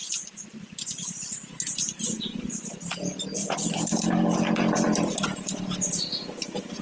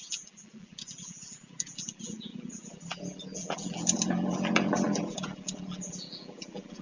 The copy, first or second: second